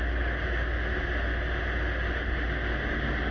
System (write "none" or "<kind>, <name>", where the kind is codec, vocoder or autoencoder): none